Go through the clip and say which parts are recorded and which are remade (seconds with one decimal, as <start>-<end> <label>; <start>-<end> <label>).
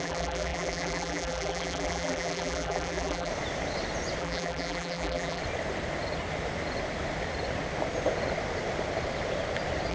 0.0-3.3 remade; 3.3-4.2 recorded; 4.2-5.4 remade; 5.4-9.9 recorded